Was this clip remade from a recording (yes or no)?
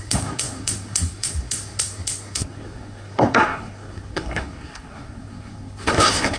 yes